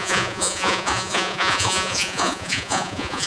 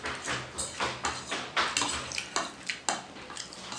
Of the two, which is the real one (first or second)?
second